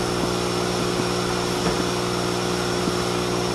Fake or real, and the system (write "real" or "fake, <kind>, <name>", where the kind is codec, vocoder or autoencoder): real